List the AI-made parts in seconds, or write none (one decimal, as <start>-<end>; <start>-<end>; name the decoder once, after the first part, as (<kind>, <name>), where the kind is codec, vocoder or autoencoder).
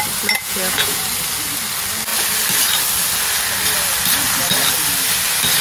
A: 0.4-1.0 (vocoder, Vocos)